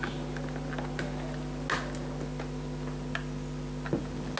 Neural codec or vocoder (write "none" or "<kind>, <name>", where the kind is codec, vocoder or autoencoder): none